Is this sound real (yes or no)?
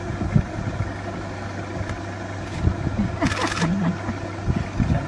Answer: yes